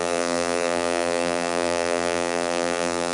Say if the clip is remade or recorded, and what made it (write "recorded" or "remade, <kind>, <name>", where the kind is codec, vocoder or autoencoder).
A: remade, vocoder, BigVGAN v2